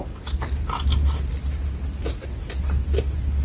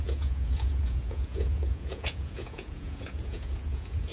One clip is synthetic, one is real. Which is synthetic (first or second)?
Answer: second